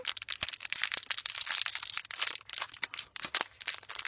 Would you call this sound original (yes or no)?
no